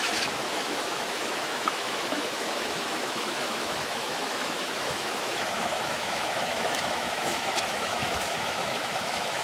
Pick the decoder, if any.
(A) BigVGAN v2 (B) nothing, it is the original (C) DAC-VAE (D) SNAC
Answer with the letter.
C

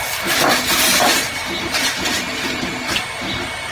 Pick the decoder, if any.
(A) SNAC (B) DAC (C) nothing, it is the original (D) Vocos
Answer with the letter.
C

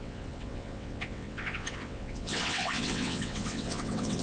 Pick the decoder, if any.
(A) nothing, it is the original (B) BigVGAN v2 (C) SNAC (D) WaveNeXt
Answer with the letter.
D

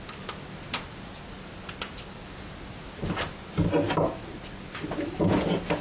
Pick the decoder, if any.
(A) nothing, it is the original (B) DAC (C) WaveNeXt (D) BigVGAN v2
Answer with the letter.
A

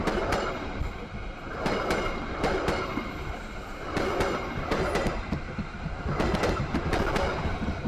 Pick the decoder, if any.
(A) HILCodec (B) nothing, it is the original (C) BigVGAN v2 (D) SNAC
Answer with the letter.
B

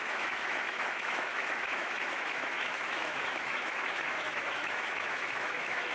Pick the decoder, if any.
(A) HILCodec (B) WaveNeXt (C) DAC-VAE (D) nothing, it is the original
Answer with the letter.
C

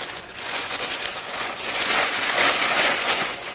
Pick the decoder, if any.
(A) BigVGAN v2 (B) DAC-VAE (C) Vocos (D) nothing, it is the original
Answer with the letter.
C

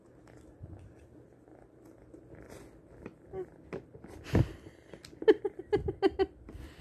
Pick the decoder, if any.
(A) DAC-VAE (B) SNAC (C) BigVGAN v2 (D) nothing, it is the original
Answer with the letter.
D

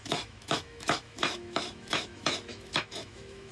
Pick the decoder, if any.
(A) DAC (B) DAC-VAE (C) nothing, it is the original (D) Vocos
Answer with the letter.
B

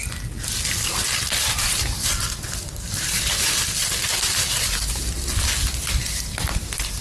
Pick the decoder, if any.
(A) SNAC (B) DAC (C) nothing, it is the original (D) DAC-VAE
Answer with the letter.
C